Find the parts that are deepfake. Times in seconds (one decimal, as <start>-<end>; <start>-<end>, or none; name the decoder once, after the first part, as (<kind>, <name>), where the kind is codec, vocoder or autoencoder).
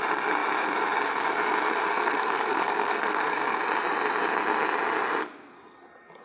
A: 1.9-3.6 (codec, SNAC)